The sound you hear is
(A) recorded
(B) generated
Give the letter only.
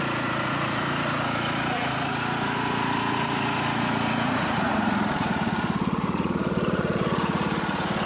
B